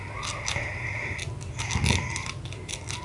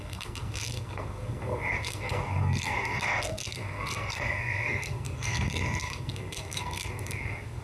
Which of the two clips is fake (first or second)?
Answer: second